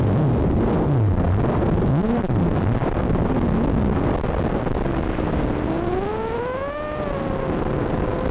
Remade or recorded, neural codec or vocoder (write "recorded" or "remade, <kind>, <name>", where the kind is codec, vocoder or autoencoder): recorded